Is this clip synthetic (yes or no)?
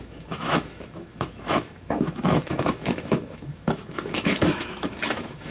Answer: yes